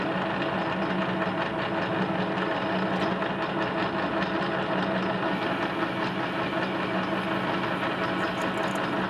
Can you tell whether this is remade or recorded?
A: recorded